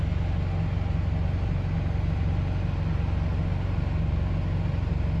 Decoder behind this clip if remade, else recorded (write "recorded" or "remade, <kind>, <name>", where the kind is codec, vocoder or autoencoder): recorded